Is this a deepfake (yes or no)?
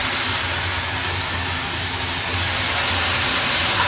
no